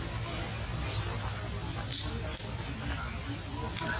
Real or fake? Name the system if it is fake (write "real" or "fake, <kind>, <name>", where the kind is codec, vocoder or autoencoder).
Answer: real